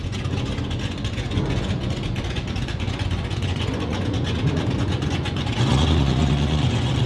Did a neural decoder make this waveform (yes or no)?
yes